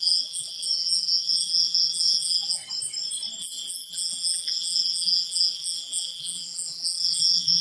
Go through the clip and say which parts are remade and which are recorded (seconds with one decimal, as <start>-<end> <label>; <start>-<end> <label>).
0.0-2.6 remade; 2.6-3.4 recorded; 3.4-7.6 remade